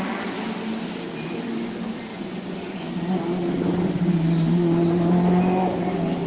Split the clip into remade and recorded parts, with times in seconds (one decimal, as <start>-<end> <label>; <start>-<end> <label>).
0.0-2.1 recorded; 2.1-3.1 remade; 3.1-6.3 recorded